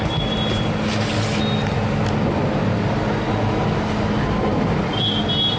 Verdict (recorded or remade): recorded